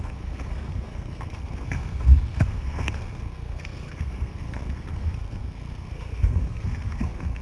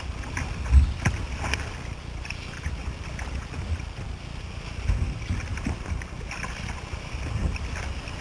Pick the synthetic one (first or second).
first